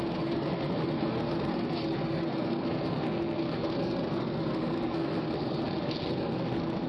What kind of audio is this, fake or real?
fake